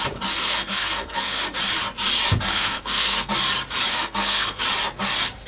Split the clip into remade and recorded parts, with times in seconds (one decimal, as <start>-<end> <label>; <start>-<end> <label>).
0.0-0.4 recorded; 0.4-1.4 remade; 1.4-2.5 recorded; 2.5-3.3 remade; 3.3-3.9 recorded; 3.9-4.6 remade; 4.6-5.5 recorded